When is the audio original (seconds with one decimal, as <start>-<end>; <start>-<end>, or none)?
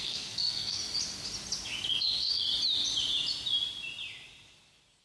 0.8-1.9; 2.4-5.0